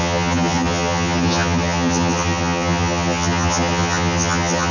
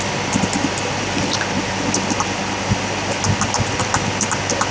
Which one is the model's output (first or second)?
first